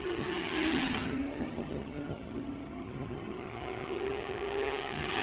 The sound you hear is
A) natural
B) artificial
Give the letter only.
B